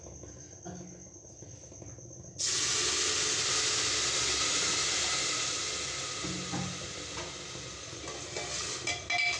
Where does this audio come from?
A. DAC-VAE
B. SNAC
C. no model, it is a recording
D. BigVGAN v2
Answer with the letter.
C